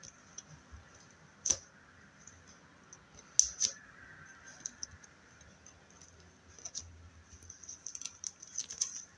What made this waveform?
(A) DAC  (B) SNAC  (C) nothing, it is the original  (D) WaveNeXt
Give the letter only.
C